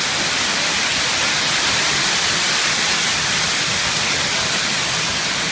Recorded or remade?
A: recorded